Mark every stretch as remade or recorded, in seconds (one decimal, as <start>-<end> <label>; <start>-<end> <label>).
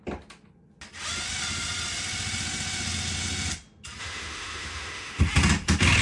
0.0-4.0 recorded; 4.0-5.2 remade; 5.2-6.0 recorded